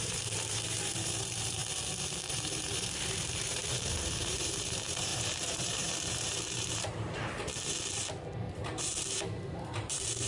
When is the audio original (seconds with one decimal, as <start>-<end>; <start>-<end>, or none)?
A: 1.6-2.3; 7.5-9.1